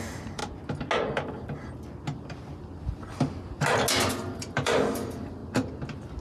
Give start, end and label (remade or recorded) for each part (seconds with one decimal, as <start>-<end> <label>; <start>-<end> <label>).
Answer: 0.0-0.4 remade; 0.4-4.1 recorded; 4.1-5.4 remade; 5.4-6.2 recorded